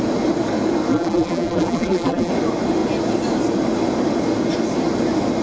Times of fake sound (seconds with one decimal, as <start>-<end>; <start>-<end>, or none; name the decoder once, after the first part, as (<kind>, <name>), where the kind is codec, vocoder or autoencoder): 0.9-2.3 (vocoder, BigVGAN v2)